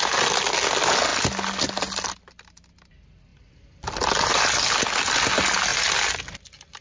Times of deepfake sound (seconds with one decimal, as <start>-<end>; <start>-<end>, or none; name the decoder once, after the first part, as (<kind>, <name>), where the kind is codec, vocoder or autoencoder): none